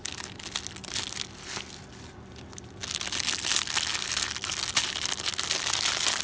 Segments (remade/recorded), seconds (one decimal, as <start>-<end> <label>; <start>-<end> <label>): 0.0-6.2 recorded